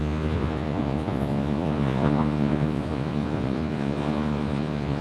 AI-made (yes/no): yes